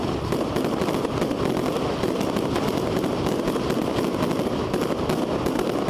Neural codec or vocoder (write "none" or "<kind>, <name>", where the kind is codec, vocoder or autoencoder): none